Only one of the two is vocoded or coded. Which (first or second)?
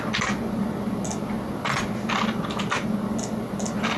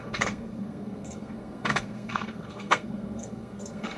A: second